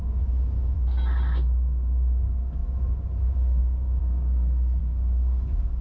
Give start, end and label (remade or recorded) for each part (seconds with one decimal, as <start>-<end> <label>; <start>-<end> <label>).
0.0-4.0 recorded; 4.0-4.8 remade; 4.8-5.8 recorded